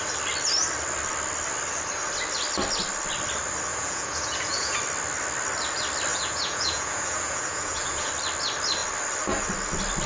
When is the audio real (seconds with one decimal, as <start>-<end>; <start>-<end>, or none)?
0.0-3.7; 4.8-6.1; 8.1-10.1